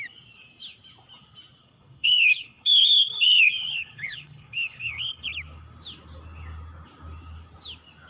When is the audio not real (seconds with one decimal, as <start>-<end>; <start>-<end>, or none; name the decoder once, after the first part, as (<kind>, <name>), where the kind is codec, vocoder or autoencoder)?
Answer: 1.6-5.3 (codec, HILCodec)